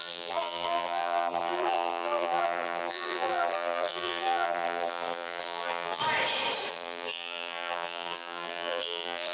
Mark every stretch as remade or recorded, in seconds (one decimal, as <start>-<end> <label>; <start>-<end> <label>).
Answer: 0.0-6.0 remade; 6.0-6.7 recorded; 6.7-9.3 remade